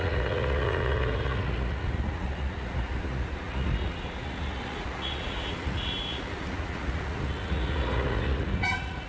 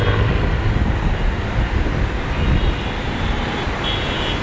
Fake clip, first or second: first